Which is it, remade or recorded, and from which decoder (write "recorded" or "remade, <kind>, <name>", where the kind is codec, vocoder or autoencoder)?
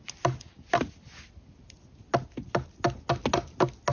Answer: recorded